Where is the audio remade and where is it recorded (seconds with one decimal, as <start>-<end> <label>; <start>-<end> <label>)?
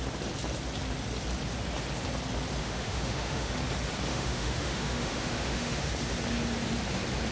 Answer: 0.0-2.6 recorded; 2.6-3.5 remade; 3.5-4.1 recorded; 4.1-5.9 remade; 5.9-7.3 recorded